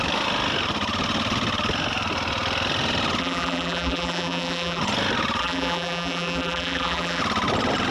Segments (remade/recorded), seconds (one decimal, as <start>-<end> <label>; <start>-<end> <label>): 0.0-3.2 recorded; 3.2-4.8 remade; 4.8-5.4 recorded; 5.4-7.2 remade; 7.2-7.9 recorded